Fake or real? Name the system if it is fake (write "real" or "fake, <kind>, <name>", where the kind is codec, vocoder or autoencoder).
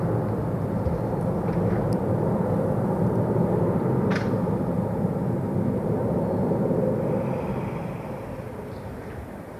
fake, vocoder, BigVGAN v2